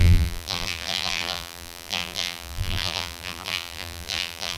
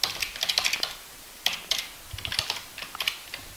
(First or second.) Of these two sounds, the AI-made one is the first